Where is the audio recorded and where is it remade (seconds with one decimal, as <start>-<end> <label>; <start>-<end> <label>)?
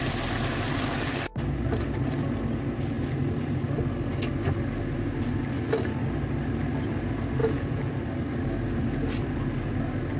0.0-7.4 recorded; 7.4-8.0 remade; 8.0-10.2 recorded